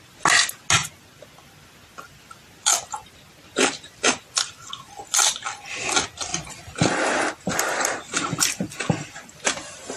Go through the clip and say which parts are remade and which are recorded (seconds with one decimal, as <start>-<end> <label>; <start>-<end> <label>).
0.0-6.3 recorded; 6.3-10.0 remade